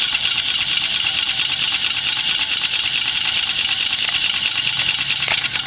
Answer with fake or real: real